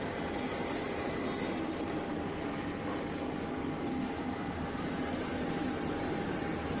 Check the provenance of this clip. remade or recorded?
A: recorded